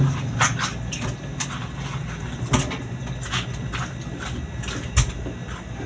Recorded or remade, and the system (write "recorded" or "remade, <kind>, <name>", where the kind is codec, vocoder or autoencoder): recorded